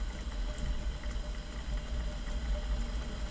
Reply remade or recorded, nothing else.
recorded